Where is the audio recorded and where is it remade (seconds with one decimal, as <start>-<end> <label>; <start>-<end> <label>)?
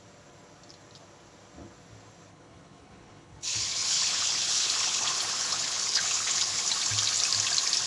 0.0-2.3 recorded; 2.3-6.6 remade; 6.6-7.9 recorded